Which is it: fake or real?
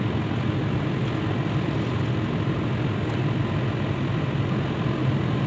real